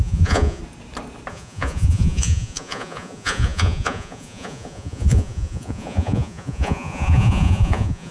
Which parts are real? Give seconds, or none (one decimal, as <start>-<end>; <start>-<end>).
0.6-1.3